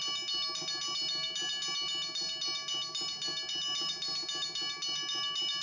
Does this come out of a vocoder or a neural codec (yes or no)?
no